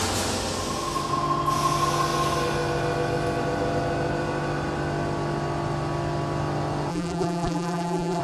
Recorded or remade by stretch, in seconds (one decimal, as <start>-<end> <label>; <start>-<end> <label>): 0.0-6.9 recorded; 6.9-8.2 remade